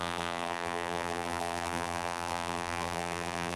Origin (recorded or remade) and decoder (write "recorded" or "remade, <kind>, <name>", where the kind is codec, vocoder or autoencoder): remade, vocoder, BigVGAN v2